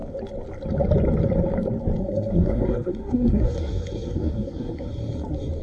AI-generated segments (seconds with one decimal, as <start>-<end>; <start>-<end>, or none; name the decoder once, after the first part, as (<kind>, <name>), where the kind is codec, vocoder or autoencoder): 2.0-4.9 (codec, SNAC)